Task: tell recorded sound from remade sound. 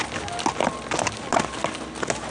recorded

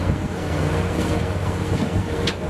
remade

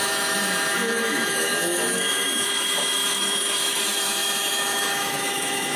remade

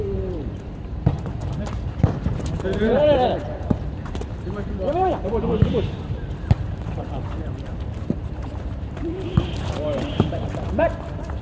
remade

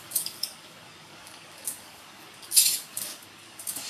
remade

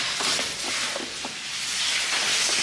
remade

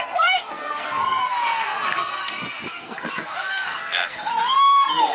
remade